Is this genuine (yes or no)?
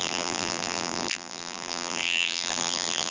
no